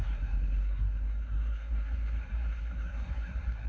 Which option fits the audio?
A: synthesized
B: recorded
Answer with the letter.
A